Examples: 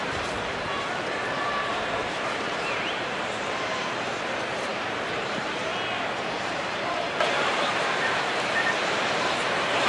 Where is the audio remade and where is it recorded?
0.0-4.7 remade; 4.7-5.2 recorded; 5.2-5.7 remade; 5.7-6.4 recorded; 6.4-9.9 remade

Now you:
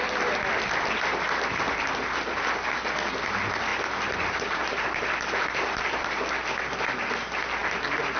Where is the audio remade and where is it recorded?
0.0-3.7 recorded; 3.7-6.2 remade; 6.2-8.2 recorded

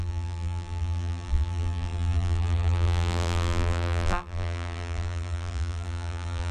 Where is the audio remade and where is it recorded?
0.0-6.5 remade

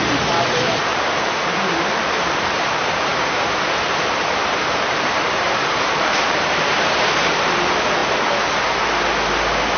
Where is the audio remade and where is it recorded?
0.0-8.0 remade; 8.0-9.8 recorded